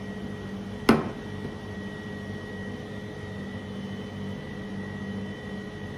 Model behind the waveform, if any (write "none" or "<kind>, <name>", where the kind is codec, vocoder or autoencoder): none